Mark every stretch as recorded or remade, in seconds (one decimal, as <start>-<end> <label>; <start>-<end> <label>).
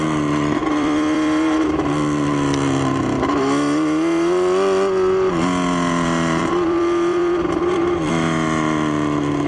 0.0-0.6 recorded; 0.6-1.7 remade; 1.7-6.4 recorded; 6.4-8.1 remade; 8.1-9.5 recorded